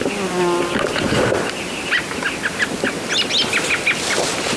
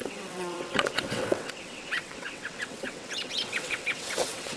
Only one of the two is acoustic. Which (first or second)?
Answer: first